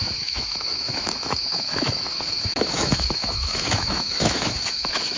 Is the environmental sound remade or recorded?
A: remade